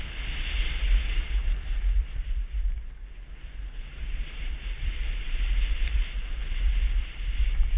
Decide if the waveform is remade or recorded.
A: remade